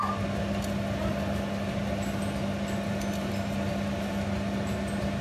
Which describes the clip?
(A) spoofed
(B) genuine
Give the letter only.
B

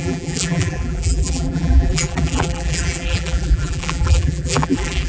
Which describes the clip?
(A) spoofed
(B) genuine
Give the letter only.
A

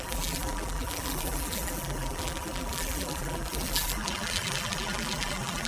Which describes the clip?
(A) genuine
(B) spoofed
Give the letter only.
B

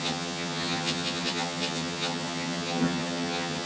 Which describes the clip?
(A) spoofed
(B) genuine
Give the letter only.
A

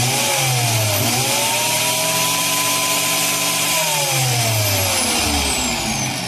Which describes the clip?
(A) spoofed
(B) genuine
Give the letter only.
B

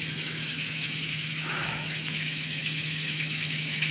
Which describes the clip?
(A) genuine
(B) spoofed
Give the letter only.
B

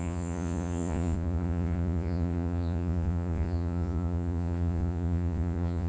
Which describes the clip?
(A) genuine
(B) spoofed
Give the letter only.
B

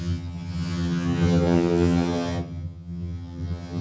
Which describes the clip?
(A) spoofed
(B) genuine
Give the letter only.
A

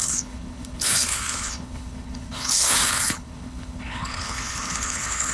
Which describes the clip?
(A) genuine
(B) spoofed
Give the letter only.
B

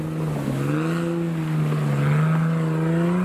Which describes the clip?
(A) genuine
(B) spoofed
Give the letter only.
A